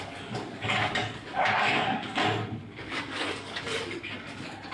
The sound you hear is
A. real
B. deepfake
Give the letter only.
B